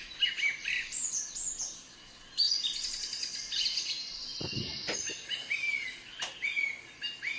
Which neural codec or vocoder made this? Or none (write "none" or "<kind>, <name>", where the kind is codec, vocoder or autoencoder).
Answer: none